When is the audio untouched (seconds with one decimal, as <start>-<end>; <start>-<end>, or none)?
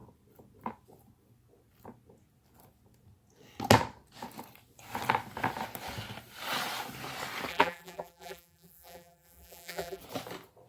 0.0-7.5; 10.0-10.7